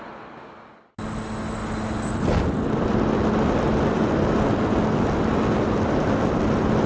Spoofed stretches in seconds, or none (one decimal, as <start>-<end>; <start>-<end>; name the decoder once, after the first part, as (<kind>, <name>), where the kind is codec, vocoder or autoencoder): none